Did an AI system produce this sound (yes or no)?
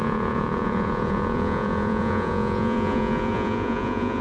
yes